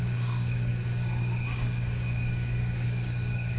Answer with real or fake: fake